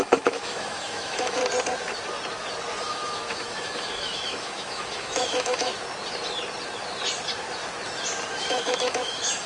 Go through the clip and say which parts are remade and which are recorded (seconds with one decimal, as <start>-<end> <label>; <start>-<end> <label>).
0.0-1.4 remade; 1.4-2.8 recorded; 2.8-5.7 remade; 5.7-8.5 recorded; 8.5-9.5 remade